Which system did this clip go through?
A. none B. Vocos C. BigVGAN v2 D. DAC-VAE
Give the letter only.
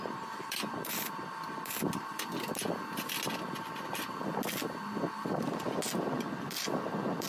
A